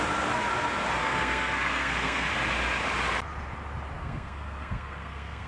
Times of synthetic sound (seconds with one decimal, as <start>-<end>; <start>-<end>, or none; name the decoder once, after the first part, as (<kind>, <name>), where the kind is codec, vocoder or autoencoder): 1.0-2.3 (codec, SNAC); 4.0-5.5